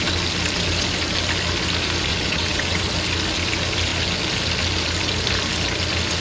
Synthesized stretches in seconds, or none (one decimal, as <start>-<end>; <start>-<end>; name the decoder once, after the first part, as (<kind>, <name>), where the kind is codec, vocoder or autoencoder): 2.1-2.8 (vocoder, WaveNeXt)